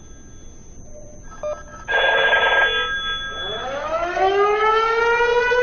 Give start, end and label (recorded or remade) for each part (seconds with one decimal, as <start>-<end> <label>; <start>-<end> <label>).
0.0-1.7 recorded; 1.7-2.3 remade; 2.3-3.4 recorded; 3.4-5.0 remade; 5.0-5.6 recorded